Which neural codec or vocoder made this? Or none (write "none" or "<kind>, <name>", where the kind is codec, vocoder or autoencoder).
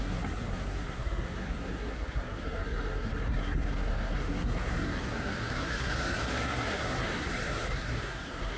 codec, SNAC